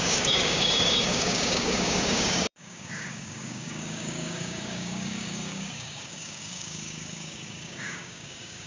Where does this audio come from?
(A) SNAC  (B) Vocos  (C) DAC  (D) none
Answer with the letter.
C